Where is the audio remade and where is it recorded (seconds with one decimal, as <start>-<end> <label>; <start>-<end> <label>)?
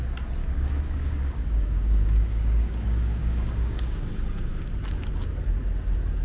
0.0-0.4 recorded; 0.4-4.1 remade; 4.1-4.5 recorded; 4.5-5.0 remade; 5.0-6.2 recorded